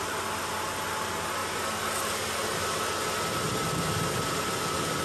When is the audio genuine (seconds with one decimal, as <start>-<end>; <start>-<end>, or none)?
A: 0.0-5.0